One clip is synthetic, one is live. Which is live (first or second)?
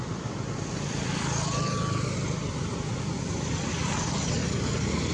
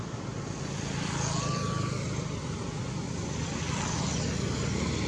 second